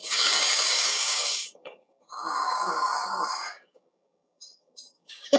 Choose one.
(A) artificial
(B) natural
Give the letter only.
A